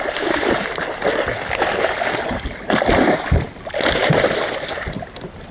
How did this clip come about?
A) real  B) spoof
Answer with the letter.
A